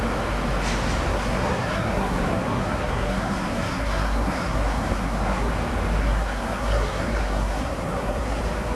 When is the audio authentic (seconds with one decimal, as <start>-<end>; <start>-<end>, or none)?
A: 0.0-1.1; 5.5-6.0; 8.4-8.8